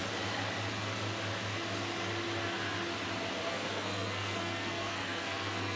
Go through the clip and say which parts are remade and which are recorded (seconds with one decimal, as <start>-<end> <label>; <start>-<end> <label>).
0.0-3.5 recorded; 3.5-5.8 remade